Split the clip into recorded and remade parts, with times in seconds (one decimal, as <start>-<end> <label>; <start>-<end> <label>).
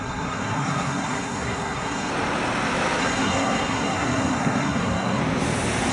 0.0-2.1 remade; 2.1-3.0 recorded; 3.0-5.2 remade; 5.2-5.9 recorded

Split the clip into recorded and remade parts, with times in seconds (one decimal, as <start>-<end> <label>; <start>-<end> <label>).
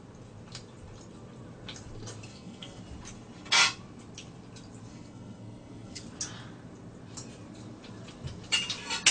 0.0-2.3 recorded; 2.3-2.8 remade; 2.8-4.9 recorded; 4.9-6.0 remade; 6.0-9.1 recorded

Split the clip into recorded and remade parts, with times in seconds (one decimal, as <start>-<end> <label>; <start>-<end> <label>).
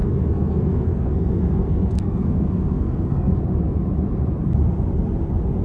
0.0-3.4 remade; 3.4-5.6 recorded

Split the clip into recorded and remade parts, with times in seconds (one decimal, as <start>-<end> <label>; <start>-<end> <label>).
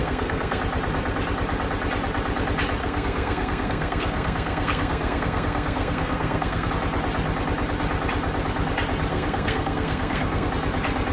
0.0-0.6 remade; 0.6-2.8 recorded; 2.8-6.7 remade; 6.7-9.1 recorded; 9.1-10.5 remade; 10.5-11.1 recorded